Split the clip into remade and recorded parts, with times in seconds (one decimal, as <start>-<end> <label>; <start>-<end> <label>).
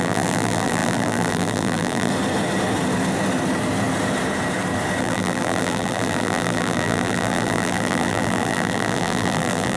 0.0-2.1 remade; 2.1-5.0 recorded; 5.0-9.8 remade